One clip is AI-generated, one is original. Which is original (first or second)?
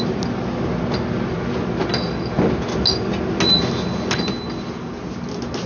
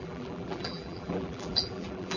first